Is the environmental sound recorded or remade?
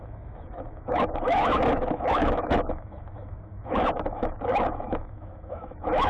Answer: remade